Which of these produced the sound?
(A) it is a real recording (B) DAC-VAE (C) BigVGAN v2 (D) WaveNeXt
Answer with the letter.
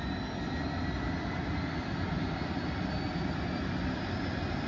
A